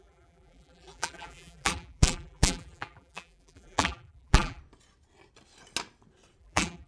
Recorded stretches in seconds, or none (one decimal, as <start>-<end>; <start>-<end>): 4.6-6.4